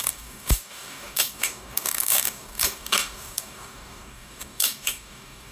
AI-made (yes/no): yes